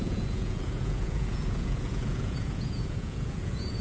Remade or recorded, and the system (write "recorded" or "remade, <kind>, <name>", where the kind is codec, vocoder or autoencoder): remade, vocoder, Vocos